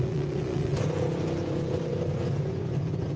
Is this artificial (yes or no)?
yes